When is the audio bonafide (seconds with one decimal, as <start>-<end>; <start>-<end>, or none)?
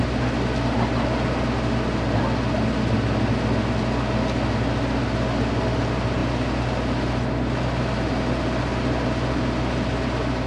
0.0-10.5